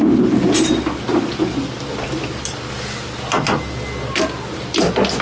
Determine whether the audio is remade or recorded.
recorded